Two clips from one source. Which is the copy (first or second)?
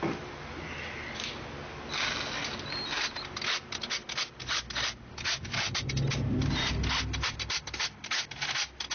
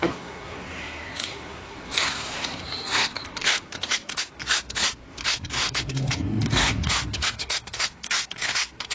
second